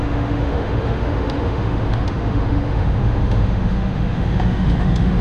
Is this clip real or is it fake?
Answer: fake